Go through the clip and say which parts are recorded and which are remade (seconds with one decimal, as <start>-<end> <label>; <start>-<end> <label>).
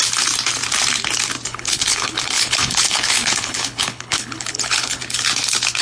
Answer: 0.0-1.5 recorded; 1.5-5.0 remade; 5.0-5.8 recorded